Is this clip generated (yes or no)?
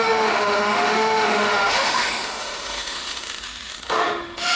yes